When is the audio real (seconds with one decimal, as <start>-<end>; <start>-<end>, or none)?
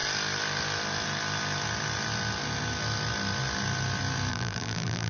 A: 0.0-4.3